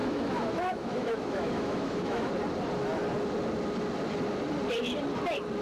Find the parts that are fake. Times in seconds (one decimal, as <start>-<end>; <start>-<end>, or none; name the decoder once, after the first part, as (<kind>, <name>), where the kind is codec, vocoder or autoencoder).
0.0-2.3 (autoencoder, DAC-VAE)